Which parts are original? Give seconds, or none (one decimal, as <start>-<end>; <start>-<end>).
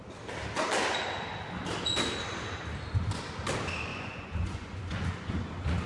0.0-3.9; 5.3-5.9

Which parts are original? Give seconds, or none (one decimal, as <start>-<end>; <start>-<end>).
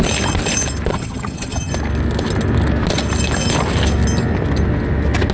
0.0-0.9; 1.7-5.3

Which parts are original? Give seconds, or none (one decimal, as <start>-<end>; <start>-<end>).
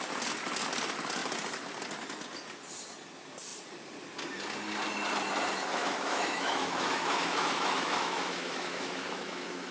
0.0-5.8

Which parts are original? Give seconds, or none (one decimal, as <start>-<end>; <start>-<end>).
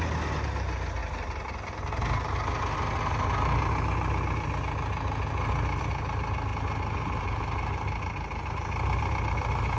0.0-9.8